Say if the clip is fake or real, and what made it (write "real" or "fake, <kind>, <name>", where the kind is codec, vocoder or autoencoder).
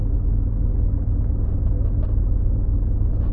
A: real